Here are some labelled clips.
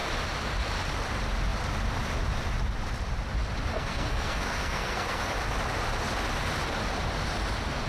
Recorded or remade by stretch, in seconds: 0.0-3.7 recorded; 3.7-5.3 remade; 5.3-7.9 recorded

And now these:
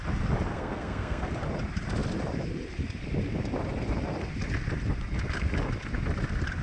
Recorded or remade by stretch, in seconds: 0.0-0.5 recorded; 0.5-1.3 remade; 1.3-6.6 recorded

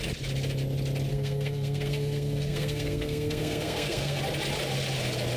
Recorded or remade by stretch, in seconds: 0.0-1.1 recorded; 1.1-4.2 remade; 4.2-5.4 recorded